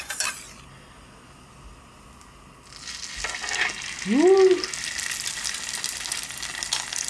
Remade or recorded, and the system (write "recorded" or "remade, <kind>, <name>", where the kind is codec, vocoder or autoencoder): recorded